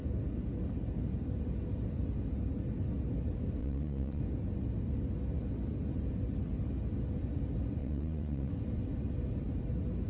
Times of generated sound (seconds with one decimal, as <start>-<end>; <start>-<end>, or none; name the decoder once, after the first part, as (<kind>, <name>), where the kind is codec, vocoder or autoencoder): 3.6-4.2 (vocoder, Vocos); 7.8-8.5